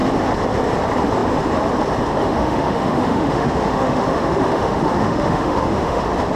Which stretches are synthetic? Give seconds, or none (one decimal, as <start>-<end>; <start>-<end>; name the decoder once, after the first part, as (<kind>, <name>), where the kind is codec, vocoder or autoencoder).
2.2-6.0 (autoencoder, DAC-VAE)